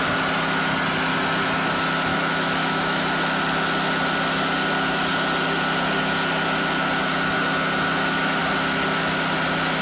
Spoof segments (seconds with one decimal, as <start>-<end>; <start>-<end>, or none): 2.1-3.0